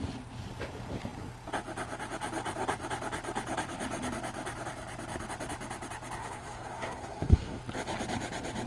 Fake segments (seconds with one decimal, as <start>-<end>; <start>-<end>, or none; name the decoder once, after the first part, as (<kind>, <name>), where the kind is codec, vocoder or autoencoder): 6.2-7.6 (codec, SNAC)